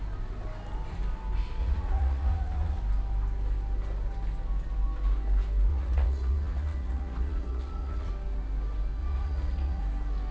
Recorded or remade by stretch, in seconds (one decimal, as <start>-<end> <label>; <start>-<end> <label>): 0.0-1.6 recorded; 1.6-2.8 remade; 2.8-5.7 recorded; 5.7-8.1 remade; 8.1-9.0 recorded; 9.0-9.8 remade; 9.8-10.3 recorded